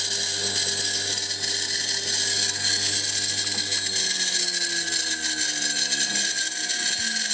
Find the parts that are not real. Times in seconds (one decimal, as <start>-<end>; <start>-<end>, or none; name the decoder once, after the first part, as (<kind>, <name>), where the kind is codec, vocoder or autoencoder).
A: none